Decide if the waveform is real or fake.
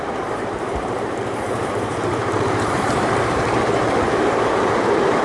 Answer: fake